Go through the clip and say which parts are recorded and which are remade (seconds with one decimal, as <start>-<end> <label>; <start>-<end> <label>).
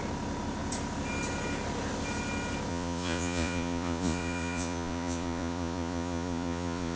0.0-2.7 recorded; 2.7-7.0 remade